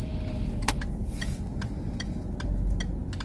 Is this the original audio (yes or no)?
yes